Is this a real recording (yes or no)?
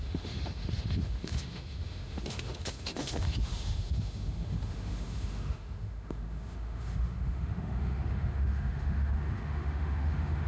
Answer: no